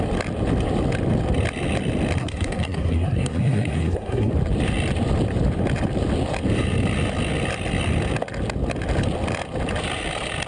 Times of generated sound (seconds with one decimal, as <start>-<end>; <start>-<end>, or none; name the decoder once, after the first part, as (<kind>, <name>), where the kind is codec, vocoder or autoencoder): 2.2-4.3 (codec, SNAC)